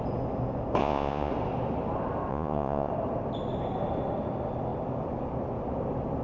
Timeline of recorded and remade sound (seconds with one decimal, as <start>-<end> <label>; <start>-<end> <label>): 0.0-0.8 recorded; 0.8-1.3 remade; 1.3-2.3 recorded; 2.3-2.9 remade; 2.9-6.2 recorded